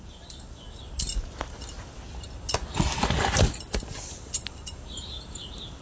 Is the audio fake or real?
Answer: real